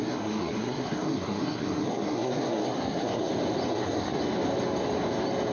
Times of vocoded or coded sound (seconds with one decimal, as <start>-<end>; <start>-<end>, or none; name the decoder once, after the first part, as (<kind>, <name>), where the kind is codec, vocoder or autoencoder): 0.0-3.3 (codec, SNAC); 3.7-4.2